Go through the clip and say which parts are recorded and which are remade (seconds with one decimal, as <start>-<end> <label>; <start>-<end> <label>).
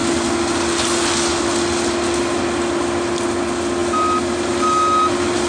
0.0-5.5 recorded